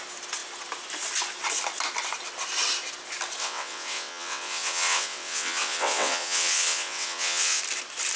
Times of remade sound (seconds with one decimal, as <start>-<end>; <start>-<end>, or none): 3.4-7.6